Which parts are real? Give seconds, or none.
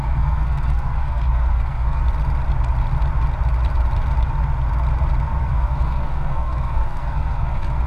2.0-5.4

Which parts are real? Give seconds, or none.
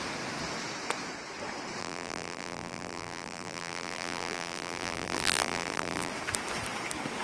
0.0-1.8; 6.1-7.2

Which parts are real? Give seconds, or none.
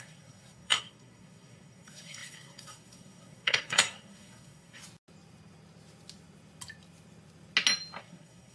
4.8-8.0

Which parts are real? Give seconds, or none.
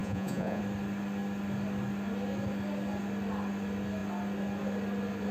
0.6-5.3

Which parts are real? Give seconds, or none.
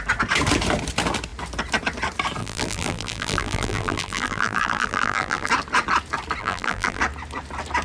0.0-2.4; 5.5-6.4; 7.0-7.8